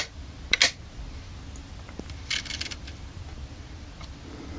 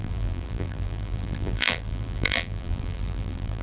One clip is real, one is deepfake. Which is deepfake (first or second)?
second